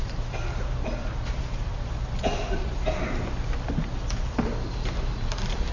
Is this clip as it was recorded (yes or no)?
yes